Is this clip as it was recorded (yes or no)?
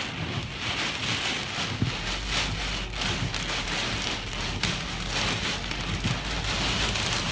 yes